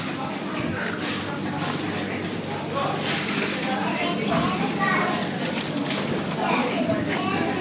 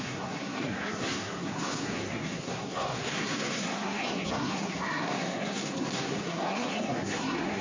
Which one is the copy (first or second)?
second